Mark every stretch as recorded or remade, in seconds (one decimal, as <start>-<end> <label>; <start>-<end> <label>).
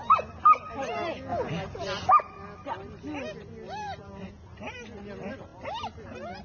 0.0-6.4 recorded